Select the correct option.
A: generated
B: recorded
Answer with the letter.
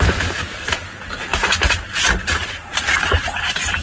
B